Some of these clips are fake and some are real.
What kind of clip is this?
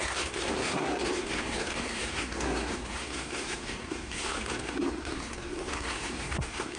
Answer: fake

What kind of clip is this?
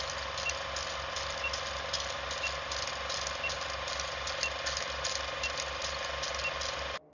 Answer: real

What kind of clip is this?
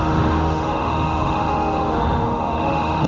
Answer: fake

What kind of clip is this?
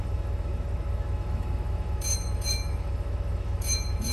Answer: fake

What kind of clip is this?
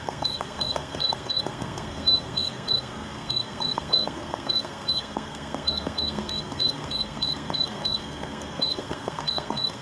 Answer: fake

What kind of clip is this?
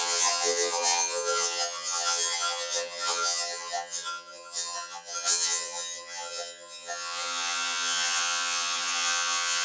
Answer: fake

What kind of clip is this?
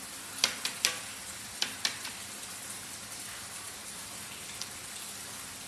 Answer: real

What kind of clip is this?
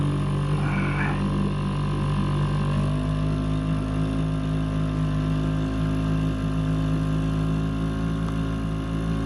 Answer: real